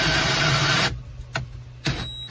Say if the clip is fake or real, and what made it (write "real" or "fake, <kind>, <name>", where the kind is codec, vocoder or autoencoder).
real